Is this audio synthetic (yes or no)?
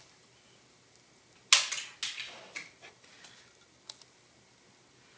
no